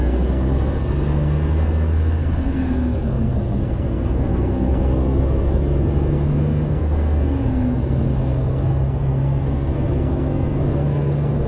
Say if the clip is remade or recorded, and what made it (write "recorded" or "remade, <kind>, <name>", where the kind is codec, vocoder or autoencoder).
remade, codec, SNAC